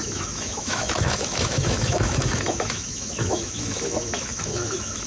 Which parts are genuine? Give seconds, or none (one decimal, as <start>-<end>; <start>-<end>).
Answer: none